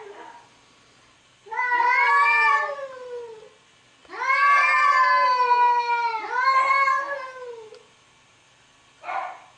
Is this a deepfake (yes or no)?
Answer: no